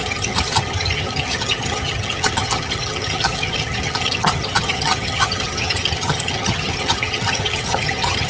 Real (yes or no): no